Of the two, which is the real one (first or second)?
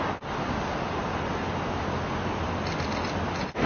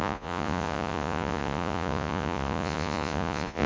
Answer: first